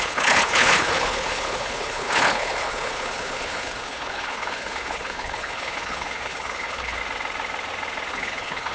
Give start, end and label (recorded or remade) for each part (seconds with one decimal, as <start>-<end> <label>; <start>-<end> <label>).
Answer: 0.0-7.0 remade; 7.0-8.1 recorded; 8.1-8.7 remade